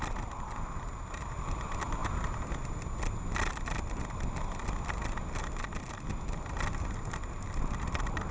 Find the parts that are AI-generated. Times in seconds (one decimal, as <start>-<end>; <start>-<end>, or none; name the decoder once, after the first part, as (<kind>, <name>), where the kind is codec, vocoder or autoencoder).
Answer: none